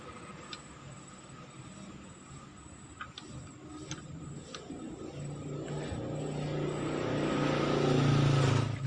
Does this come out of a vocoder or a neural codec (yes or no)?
no